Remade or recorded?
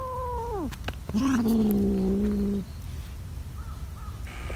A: recorded